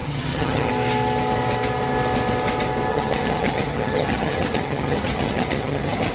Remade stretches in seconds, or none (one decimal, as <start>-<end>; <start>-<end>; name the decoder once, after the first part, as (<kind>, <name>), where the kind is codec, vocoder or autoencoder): 0.0-0.7 (vocoder, HiFi-GAN); 2.9-6.1